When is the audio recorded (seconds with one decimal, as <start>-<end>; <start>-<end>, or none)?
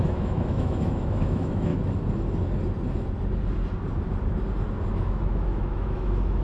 1.7-4.9